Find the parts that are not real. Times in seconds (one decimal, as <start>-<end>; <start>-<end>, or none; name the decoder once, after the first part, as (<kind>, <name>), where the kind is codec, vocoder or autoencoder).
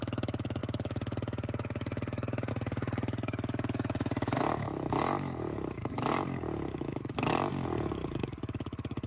0.0-9.1 (codec, DAC)